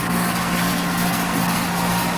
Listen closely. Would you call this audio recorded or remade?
remade